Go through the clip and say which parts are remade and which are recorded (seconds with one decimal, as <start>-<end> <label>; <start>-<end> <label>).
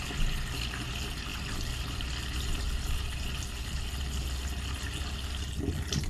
0.0-6.1 recorded